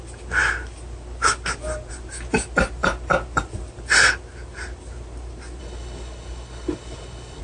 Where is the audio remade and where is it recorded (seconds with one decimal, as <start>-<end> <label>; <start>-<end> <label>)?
0.0-5.6 recorded; 5.6-7.4 remade